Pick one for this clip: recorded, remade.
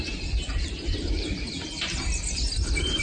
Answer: recorded